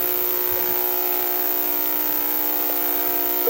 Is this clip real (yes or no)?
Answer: yes